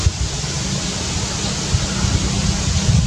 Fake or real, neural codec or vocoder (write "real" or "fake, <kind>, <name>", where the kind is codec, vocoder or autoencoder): real